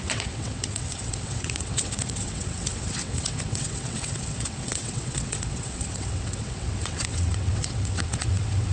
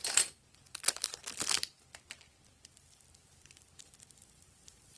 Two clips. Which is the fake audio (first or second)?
first